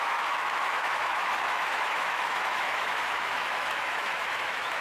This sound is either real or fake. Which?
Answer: fake